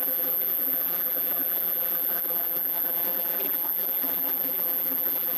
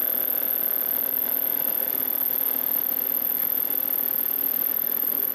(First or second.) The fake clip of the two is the first